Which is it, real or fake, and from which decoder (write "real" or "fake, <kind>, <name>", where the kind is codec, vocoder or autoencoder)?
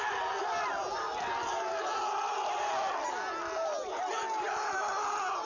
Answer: real